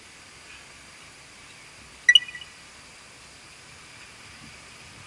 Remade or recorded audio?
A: recorded